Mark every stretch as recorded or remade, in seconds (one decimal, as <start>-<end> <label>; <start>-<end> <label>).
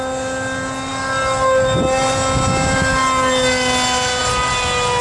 0.0-5.0 recorded